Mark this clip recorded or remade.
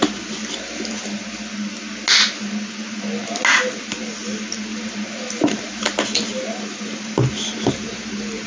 recorded